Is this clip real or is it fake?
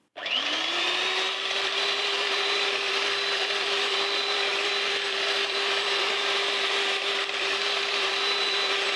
fake